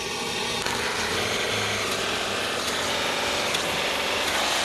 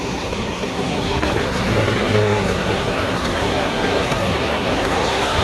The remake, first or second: second